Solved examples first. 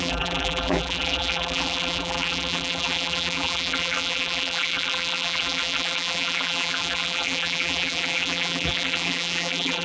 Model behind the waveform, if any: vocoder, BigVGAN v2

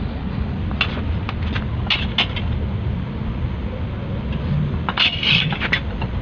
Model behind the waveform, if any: none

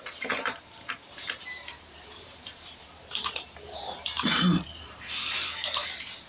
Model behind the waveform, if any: vocoder, BigVGAN v2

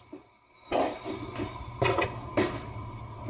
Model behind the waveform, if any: none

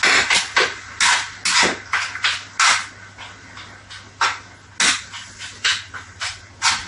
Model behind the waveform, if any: none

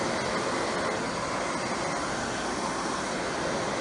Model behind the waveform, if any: none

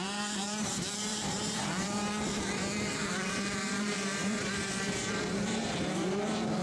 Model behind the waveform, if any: vocoder, BigVGAN v2